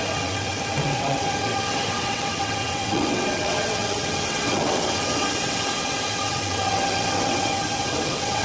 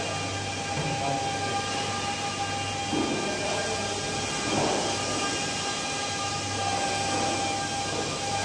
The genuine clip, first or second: second